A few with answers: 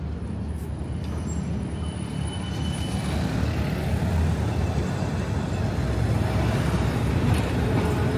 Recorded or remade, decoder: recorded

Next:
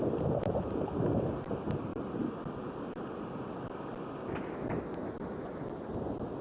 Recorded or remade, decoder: recorded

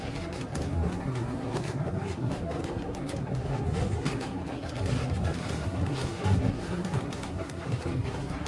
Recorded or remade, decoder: remade, codec, SNAC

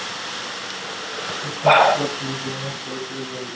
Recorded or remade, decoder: recorded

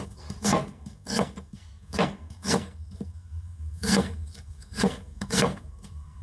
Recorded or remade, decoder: remade, codec, SNAC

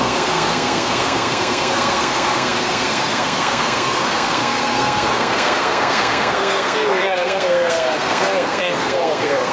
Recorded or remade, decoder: remade, codec, SNAC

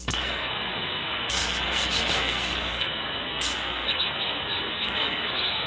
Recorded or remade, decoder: remade, codec, SNAC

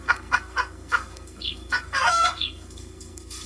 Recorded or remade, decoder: remade, codec, SNAC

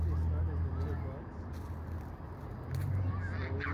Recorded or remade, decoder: recorded